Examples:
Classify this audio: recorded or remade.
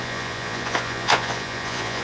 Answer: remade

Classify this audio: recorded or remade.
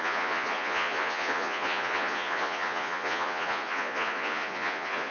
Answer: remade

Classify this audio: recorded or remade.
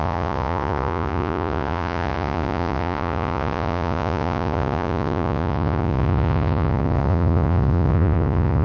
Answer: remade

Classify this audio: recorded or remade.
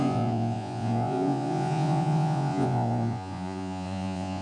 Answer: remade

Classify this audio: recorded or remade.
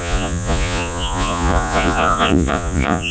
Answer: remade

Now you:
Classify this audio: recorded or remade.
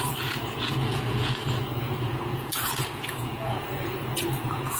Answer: remade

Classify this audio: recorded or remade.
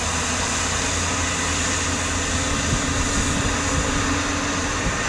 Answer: recorded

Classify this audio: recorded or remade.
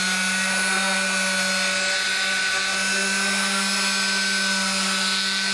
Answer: recorded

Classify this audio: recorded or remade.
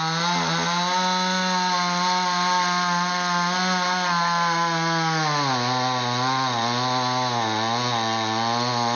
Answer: recorded